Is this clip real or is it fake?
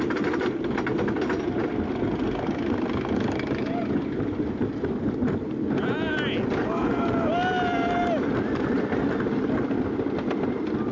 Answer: real